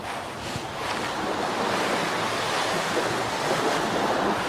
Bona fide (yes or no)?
yes